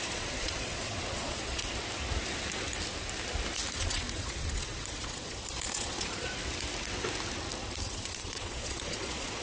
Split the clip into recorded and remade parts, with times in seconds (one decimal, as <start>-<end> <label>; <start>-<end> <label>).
0.0-1.6 remade; 1.6-3.7 recorded; 3.7-6.4 remade; 6.4-7.8 recorded; 7.8-9.4 remade